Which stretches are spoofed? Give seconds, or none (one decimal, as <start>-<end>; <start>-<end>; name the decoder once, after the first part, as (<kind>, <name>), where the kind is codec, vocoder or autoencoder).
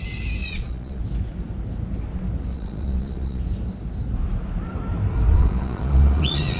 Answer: 0.4-1.0 (vocoder, Vocos); 2.5-3.4; 5.3-6.6